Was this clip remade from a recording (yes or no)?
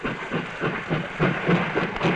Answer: no